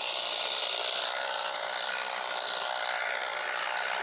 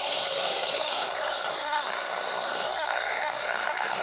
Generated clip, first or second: second